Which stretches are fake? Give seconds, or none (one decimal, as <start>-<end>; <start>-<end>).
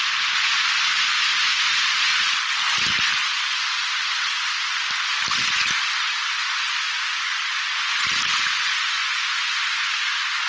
none